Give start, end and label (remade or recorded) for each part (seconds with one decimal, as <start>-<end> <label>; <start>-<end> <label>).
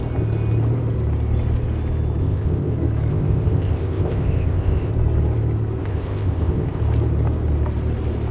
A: 0.0-2.2 recorded; 2.2-2.7 remade; 2.7-3.1 recorded; 3.1-4.9 remade; 4.9-5.8 recorded; 5.8-6.8 remade; 6.8-8.3 recorded